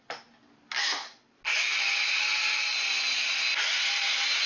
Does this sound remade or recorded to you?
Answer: recorded